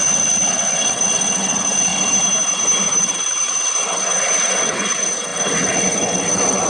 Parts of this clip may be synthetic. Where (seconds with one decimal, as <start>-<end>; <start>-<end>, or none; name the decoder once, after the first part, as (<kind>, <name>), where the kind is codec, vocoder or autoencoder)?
0.0-1.9 (vocoder, WaveNeXt); 3.0-6.7